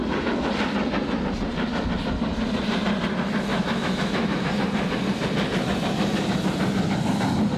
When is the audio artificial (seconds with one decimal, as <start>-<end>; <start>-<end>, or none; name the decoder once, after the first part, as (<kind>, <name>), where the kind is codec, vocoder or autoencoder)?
3.5-4.5 (autoencoder, DAC-VAE)